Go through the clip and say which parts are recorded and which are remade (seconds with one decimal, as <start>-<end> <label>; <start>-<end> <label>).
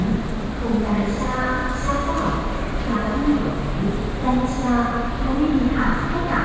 0.0-6.4 recorded